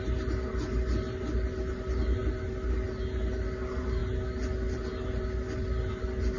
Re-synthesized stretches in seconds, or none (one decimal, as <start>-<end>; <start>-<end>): none